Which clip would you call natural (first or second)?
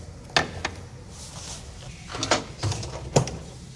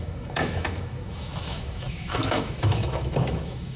first